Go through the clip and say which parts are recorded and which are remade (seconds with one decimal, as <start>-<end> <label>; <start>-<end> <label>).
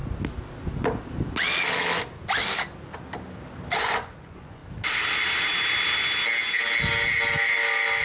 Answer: 0.0-3.8 recorded; 3.8-4.6 remade; 4.6-8.0 recorded